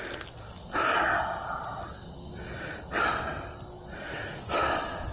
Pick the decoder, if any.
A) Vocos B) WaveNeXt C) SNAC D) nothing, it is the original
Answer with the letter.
D